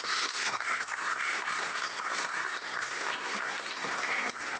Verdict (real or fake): fake